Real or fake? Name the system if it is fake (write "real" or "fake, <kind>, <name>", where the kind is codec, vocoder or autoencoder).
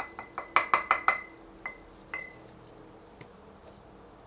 real